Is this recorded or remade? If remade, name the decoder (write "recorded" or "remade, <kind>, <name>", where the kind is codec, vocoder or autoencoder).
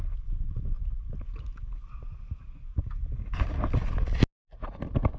recorded